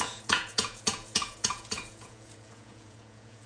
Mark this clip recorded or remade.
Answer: remade